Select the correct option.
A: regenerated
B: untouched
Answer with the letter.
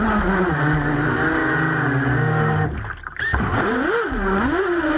B